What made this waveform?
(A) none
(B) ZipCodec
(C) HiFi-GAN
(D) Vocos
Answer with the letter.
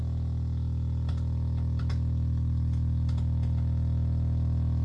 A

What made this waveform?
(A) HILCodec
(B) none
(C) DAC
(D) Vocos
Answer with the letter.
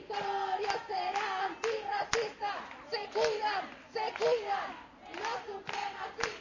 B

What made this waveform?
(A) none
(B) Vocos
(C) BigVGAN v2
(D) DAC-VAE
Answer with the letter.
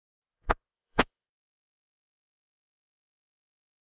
B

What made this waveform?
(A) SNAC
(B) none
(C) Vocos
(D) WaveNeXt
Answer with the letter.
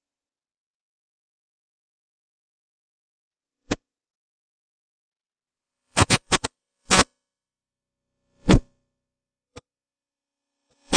C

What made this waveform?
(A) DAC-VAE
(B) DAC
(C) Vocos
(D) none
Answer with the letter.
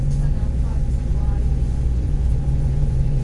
C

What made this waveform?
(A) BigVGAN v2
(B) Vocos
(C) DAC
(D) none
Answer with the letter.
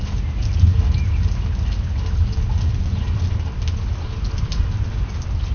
D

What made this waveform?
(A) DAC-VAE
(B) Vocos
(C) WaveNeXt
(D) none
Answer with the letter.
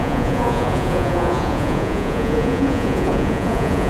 B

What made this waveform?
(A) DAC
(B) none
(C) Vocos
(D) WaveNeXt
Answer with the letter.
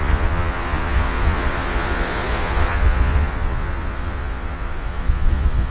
C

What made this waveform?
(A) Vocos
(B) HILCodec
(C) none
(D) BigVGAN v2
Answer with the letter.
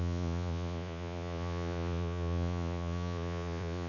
A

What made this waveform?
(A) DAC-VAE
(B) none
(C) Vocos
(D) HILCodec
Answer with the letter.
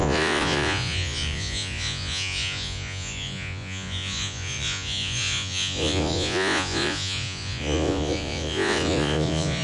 C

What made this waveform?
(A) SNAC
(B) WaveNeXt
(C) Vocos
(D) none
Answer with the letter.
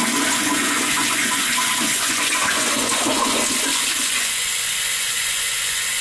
C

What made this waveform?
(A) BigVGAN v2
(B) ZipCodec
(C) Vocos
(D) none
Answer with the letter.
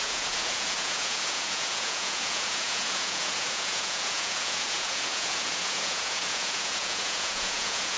C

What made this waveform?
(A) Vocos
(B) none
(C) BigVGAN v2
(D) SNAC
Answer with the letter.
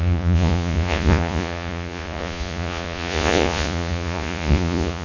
A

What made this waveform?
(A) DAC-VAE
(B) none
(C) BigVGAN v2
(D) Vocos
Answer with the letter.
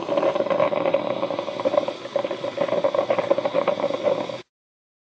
B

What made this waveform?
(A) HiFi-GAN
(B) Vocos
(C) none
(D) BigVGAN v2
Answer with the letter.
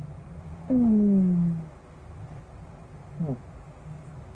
C